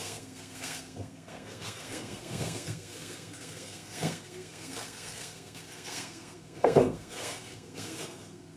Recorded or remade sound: remade